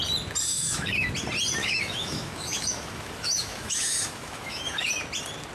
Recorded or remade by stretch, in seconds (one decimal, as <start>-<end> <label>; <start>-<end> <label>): 0.0-0.5 recorded; 0.5-1.1 remade; 1.1-1.6 recorded; 1.6-4.9 remade; 4.9-5.5 recorded